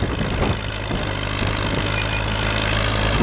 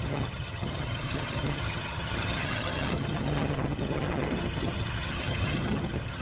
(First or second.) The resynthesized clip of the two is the second